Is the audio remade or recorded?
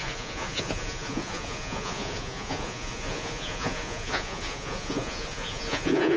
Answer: remade